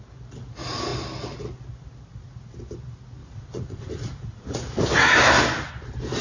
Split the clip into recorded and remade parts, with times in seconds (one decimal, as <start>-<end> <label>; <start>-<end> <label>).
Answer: 0.0-3.2 recorded; 3.2-4.8 remade; 4.8-6.2 recorded